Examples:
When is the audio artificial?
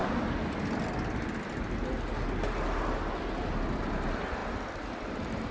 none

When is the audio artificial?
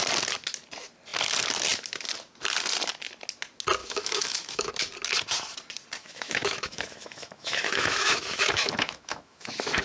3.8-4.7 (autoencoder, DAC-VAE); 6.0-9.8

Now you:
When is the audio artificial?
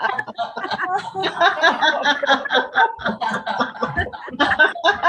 none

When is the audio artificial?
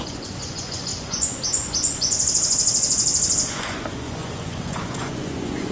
0.0-5.7 (vocoder, Vocos)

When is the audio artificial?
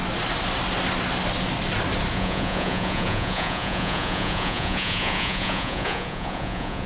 2.1-6.9 (vocoder, Vocos)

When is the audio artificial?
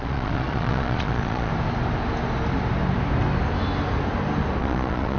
0.0-1.5 (vocoder, Vocos); 4.6-5.2